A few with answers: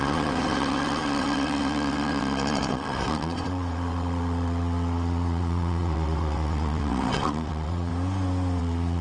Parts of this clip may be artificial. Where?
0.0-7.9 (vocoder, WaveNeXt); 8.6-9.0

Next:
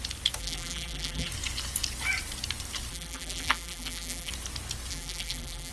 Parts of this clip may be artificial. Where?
0.4-1.3 (vocoder, BigVGAN v2); 2.9-4.3; 4.9-5.7